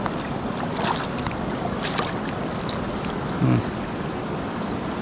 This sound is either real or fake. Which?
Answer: real